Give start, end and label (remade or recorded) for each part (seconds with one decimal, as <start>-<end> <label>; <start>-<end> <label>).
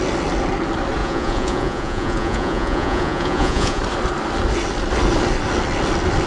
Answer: 0.0-1.0 recorded; 1.0-3.8 remade; 3.8-6.3 recorded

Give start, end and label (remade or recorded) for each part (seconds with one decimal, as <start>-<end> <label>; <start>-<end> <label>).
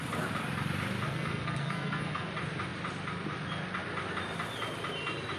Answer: 0.0-1.1 recorded; 1.1-2.3 remade; 2.3-5.4 recorded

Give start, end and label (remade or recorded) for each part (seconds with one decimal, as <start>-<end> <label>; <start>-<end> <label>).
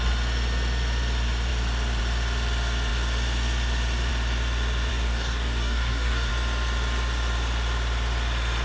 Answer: 0.0-4.9 recorded; 4.9-6.3 remade; 6.3-8.6 recorded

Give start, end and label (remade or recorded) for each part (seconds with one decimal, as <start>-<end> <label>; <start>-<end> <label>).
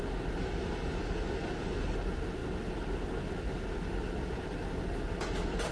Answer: 0.0-5.7 recorded